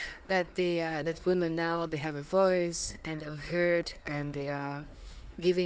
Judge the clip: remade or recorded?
remade